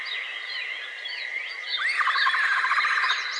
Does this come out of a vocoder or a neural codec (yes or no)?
no